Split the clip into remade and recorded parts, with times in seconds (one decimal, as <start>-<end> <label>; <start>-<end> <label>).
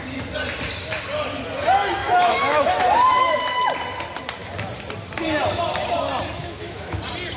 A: 0.0-2.0 recorded; 2.0-2.8 remade; 2.8-6.4 recorded; 6.4-7.0 remade; 7.0-7.4 recorded